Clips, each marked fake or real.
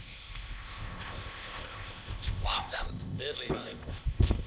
fake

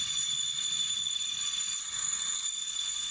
fake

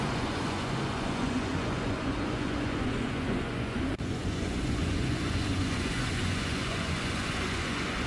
fake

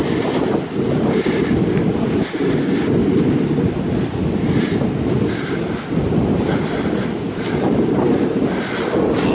real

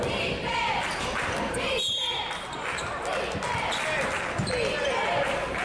real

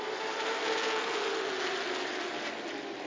real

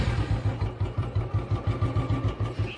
fake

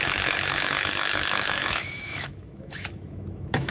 fake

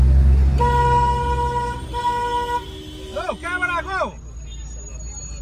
real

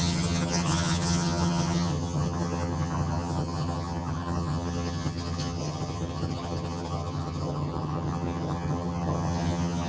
fake